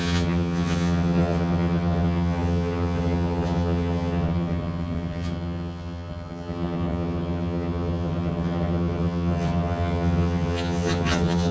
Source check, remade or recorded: remade